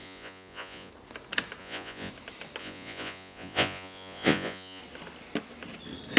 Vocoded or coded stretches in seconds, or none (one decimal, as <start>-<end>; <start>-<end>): 0.0-0.9; 1.6-2.1; 2.6-4.8